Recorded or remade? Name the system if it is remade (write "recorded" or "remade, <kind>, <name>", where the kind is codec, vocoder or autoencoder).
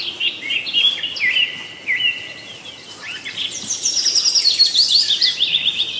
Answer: recorded